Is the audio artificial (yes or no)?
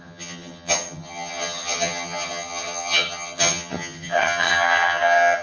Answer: yes